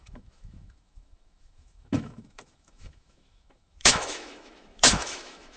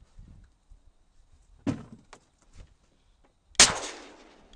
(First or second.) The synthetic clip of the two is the first